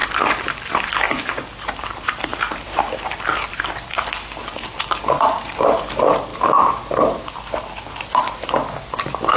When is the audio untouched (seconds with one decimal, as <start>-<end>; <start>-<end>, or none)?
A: 0.0-0.7; 2.3-3.1; 6.3-8.7